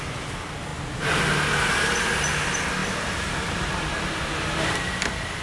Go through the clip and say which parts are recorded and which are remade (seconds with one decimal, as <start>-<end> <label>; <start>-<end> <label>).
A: 0.0-2.8 recorded; 2.8-3.7 remade; 3.7-5.4 recorded